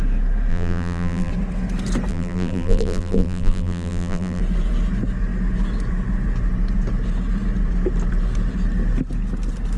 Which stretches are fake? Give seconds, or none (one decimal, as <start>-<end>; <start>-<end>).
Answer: 0.5-1.3; 2.1-4.4